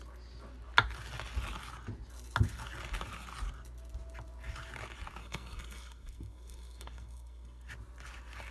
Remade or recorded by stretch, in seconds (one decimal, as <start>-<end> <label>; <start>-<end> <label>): 0.0-5.2 recorded; 5.2-7.7 remade; 7.7-8.5 recorded